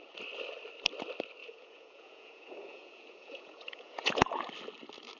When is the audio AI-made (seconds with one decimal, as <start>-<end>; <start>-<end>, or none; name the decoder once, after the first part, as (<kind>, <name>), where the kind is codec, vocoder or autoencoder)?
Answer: 1.4-4.5 (vocoder, Vocos)